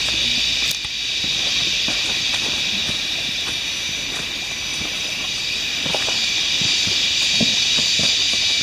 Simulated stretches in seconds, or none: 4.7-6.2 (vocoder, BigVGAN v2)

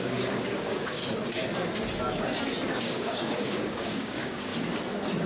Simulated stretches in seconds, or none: 0.0-1.0 (codec, DAC); 2.8-4.5

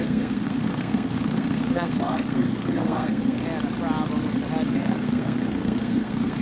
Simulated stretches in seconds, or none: 0.0-3.4 (codec, SNAC); 4.7-6.4